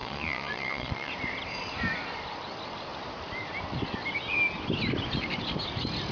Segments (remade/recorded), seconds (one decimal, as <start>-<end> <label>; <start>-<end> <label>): 0.0-1.1 remade; 1.1-6.1 recorded